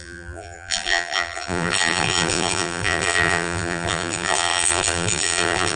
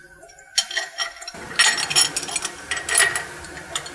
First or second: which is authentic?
second